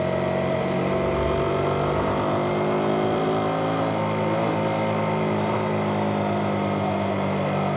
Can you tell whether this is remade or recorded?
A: recorded